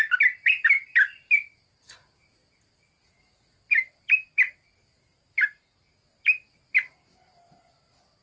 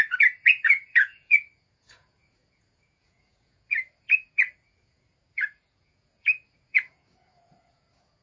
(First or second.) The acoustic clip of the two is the first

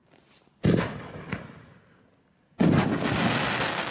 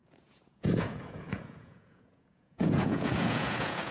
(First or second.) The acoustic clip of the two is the first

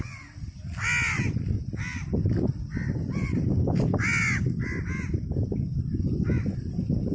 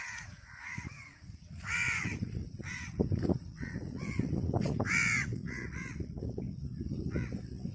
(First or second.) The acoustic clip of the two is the first